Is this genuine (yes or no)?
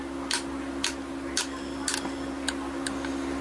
yes